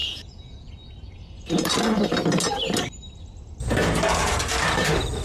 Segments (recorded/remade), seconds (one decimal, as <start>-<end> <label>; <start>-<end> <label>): 0.0-0.7 remade; 0.7-5.2 recorded